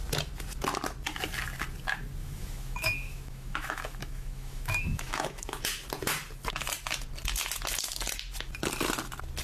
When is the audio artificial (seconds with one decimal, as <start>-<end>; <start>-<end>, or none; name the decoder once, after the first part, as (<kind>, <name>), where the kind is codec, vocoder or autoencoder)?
2.2-5.6 (autoencoder, DAC-VAE)